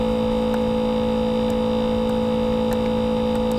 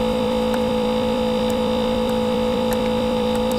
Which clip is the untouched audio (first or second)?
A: first